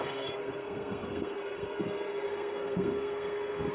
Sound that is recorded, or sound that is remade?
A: remade